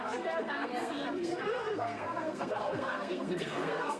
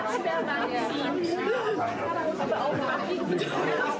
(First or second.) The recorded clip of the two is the second